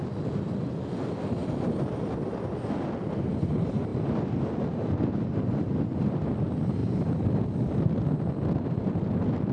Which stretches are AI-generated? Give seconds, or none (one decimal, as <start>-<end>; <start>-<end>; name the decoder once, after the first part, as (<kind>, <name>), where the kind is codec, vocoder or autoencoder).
none